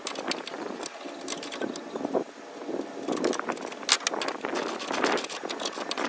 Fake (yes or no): no